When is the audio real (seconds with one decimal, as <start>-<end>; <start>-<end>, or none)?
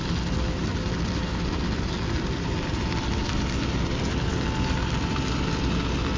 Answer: 0.0-6.2